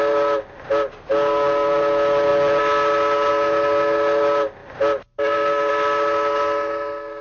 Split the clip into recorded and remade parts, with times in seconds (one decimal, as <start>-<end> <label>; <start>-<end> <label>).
0.0-7.2 recorded